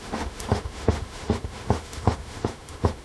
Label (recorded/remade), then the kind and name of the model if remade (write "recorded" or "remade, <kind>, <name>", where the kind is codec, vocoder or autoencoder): remade, autoencoder, DAC-VAE